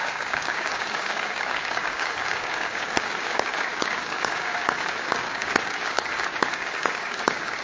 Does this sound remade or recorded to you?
remade